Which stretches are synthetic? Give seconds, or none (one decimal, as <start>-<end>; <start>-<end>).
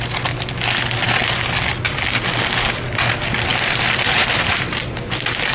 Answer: none